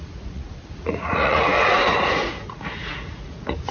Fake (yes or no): yes